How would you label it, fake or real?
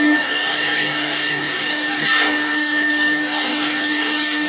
fake